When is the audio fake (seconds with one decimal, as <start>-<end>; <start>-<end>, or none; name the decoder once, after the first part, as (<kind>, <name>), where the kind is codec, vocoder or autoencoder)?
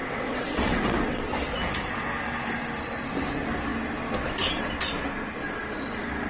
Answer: 0.0-1.2 (vocoder, WaveNeXt)